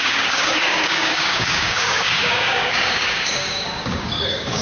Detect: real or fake fake